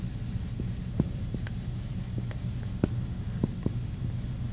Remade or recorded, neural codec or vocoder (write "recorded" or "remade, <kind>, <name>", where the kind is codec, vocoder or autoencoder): recorded